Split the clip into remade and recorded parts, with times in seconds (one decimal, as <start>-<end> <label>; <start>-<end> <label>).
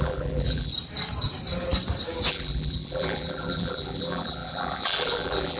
0.0-0.7 remade; 0.7-2.3 recorded; 2.3-5.6 remade